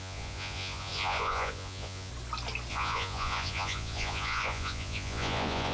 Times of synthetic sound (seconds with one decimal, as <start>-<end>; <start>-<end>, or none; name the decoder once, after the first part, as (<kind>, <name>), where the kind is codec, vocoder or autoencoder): 0.0-2.1 (vocoder, Vocos); 2.7-5.7